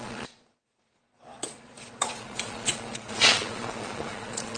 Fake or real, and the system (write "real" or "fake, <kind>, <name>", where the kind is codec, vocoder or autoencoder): fake, vocoder, Vocos